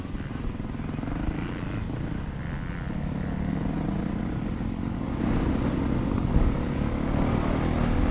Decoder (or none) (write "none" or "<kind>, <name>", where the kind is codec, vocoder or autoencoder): none